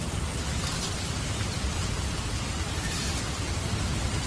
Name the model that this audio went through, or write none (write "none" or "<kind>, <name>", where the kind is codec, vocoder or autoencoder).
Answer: none